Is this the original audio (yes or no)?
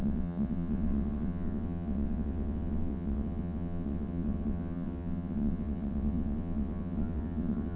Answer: no